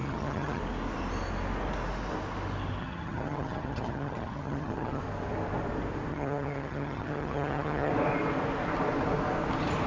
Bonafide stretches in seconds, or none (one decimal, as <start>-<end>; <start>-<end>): 0.6-2.8; 5.0-6.1; 7.9-9.9